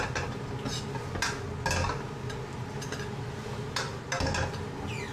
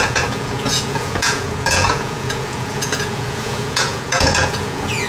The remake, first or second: second